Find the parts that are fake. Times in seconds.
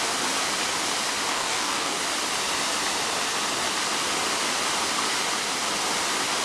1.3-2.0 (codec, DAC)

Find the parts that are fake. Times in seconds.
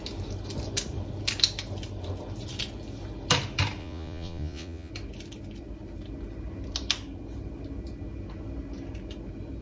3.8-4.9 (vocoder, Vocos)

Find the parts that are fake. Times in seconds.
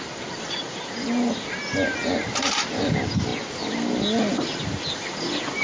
none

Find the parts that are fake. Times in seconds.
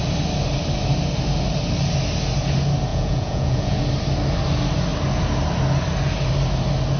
2.9-3.8 (vocoder, Vocos)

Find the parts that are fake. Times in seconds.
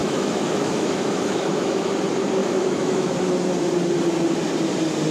0.0-1.9 (autoencoder, DAC-VAE); 2.4-3.2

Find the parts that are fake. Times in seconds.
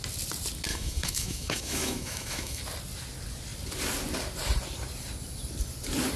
0.7-2.6 (autoencoder, DAC-VAE)